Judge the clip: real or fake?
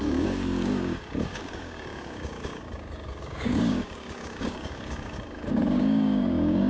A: fake